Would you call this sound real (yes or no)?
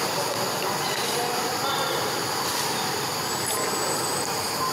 yes